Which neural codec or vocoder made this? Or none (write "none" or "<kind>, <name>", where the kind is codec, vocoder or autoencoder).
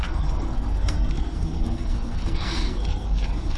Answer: codec, SNAC